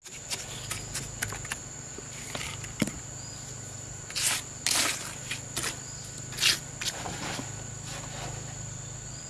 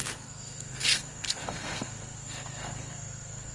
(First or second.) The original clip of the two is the first